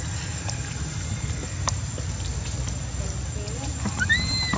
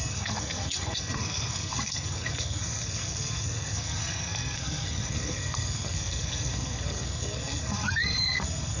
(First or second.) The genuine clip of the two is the first